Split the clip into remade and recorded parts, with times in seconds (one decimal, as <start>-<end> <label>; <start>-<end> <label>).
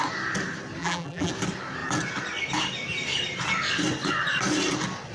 0.0-0.8 recorded; 0.8-1.3 remade; 1.3-5.1 recorded